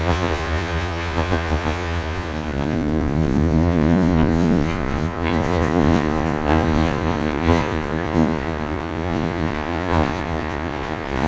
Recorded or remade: remade